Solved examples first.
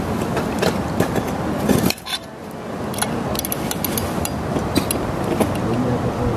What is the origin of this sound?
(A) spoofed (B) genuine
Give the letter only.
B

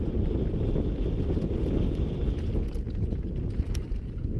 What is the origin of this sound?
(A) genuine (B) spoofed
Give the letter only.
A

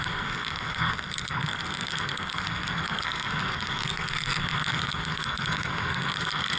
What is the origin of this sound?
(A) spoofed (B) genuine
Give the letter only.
A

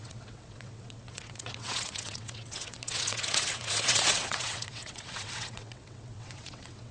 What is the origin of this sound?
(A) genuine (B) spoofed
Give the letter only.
B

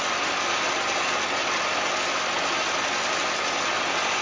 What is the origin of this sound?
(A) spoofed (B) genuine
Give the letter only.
B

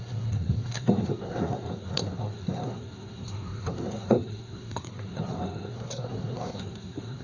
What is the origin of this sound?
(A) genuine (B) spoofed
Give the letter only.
B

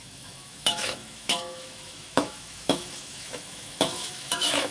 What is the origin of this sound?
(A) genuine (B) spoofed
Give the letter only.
B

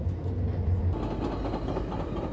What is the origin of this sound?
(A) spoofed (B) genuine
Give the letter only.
B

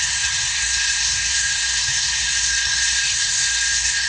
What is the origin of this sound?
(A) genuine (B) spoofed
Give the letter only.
B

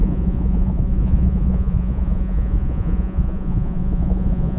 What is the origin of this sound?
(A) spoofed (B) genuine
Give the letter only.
A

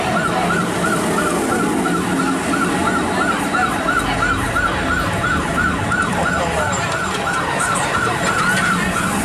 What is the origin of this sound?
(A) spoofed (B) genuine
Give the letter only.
B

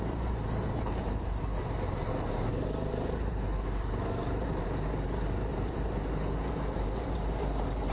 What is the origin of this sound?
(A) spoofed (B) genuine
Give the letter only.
A